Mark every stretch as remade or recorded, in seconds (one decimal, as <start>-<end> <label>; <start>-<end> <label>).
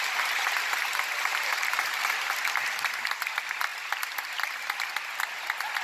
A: 0.0-1.3 recorded; 1.3-2.1 remade; 2.1-5.8 recorded